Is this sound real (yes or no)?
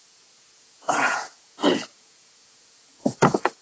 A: no